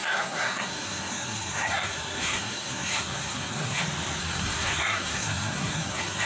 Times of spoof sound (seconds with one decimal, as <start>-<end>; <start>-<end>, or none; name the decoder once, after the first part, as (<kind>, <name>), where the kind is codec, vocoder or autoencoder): 0.0-3.8 (codec, SNAC); 4.2-6.3